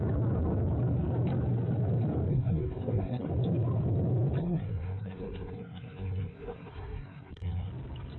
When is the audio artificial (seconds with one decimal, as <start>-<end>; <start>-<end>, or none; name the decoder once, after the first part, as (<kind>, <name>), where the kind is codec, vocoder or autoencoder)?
2.3-3.3 (codec, SNAC); 4.4-7.7